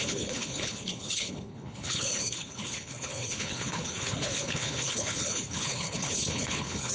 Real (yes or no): no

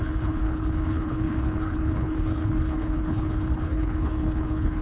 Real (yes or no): no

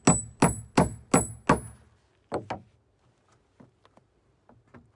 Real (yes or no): yes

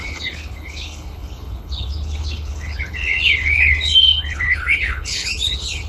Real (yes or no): no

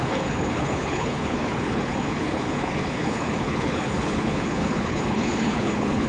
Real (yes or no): no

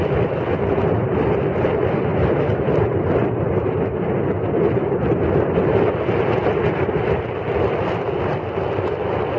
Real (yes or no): yes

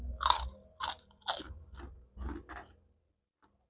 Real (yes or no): yes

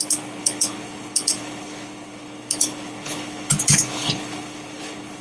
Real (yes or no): no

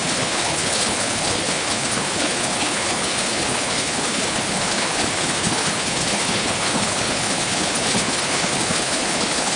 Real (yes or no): no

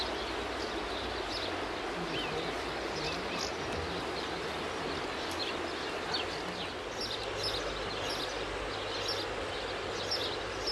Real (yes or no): yes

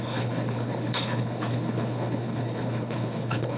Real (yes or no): no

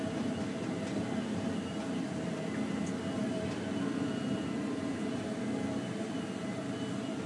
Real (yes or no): yes